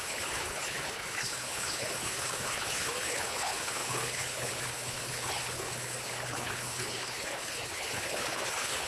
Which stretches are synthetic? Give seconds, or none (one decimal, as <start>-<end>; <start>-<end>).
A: 0.0-8.9